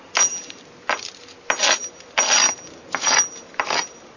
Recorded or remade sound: recorded